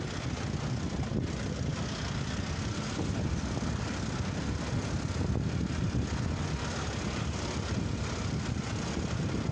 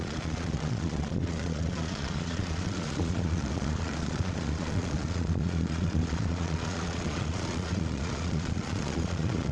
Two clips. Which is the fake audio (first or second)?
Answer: second